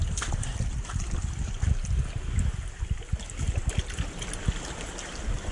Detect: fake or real real